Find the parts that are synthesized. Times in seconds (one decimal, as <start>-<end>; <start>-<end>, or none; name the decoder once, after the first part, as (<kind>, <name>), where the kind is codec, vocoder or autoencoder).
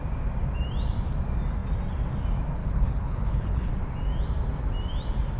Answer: 2.6-3.7 (codec, HILCodec)